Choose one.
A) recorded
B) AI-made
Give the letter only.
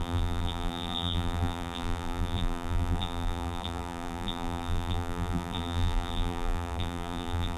B